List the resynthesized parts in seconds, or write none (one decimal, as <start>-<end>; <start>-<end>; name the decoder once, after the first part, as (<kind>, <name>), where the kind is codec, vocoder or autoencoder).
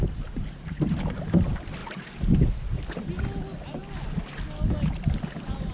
none